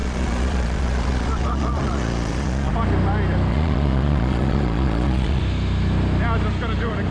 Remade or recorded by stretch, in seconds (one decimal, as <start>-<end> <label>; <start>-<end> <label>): 0.0-2.7 remade; 2.7-3.5 recorded; 3.5-5.4 remade; 5.4-7.1 recorded